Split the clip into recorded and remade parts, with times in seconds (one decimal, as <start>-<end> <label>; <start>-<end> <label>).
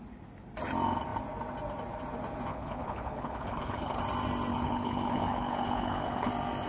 0.0-2.5 recorded; 2.5-4.0 remade; 4.0-4.5 recorded; 4.5-6.3 remade; 6.3-6.7 recorded